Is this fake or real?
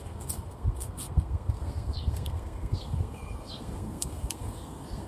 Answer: fake